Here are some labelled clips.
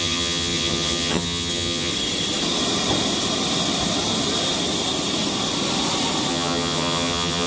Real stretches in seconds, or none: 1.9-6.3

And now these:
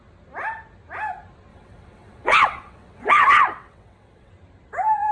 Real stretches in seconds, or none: 0.0-1.5; 4.3-5.1

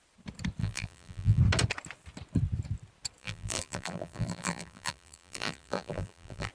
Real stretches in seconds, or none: 0.0-0.6; 1.4-3.2

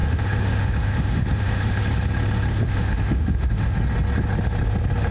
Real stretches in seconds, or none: 1.8-2.5; 3.8-5.1

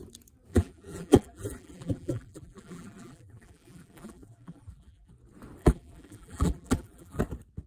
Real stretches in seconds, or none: 0.0-0.5; 5.1-5.6; 7.2-7.7

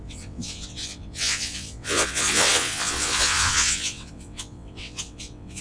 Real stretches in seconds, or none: none